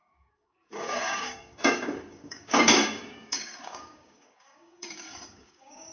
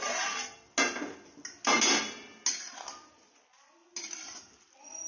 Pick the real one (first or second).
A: second